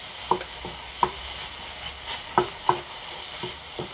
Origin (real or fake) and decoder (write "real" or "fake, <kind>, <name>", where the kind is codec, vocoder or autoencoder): real